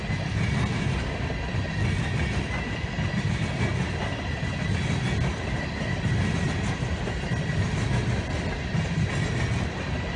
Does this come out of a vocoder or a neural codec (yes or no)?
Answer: no